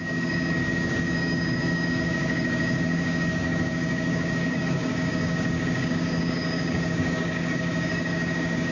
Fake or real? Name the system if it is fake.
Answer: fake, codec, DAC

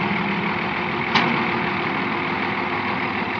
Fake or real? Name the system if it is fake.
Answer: real